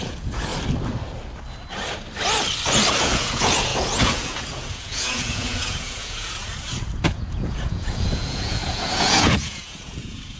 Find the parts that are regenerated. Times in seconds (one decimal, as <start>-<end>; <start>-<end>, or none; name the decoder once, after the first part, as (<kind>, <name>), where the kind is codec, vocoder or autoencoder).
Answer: 0.0-0.5 (vocoder, Vocos); 3.0-10.4